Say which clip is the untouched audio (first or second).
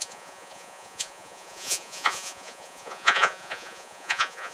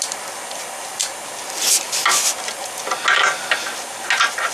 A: second